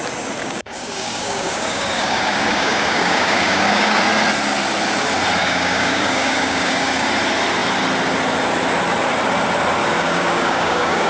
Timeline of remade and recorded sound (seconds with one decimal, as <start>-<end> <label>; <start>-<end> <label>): 0.0-0.4 recorded; 0.4-4.0 remade; 4.0-5.4 recorded; 5.4-7.0 remade; 7.0-9.8 recorded; 9.8-11.1 remade